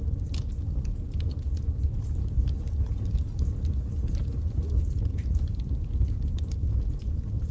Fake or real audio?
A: real